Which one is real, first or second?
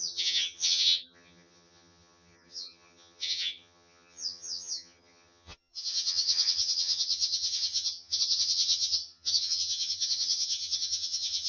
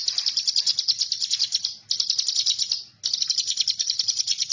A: second